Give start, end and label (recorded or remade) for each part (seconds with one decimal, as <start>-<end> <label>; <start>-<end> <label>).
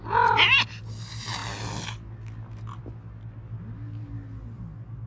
0.0-5.1 recorded